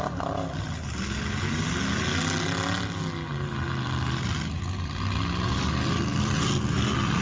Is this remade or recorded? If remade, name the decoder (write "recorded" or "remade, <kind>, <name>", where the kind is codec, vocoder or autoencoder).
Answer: recorded